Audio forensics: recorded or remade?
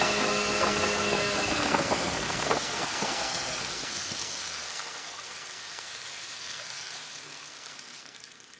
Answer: remade